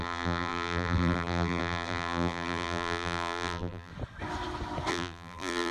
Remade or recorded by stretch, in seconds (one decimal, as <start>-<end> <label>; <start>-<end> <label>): 0.0-3.9 remade; 3.9-4.9 recorded; 4.9-5.7 remade